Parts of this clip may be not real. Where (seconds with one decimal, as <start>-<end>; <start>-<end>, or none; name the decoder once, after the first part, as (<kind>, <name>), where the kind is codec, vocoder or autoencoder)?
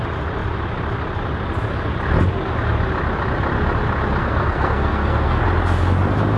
4.2-5.4 (codec, SNAC)